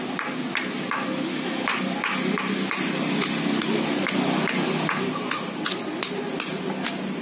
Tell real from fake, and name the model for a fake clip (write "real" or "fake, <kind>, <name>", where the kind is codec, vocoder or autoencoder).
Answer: real